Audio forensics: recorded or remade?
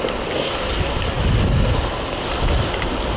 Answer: recorded